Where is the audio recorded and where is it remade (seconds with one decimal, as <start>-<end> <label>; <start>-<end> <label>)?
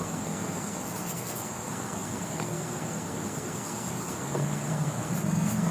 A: 0.0-5.7 remade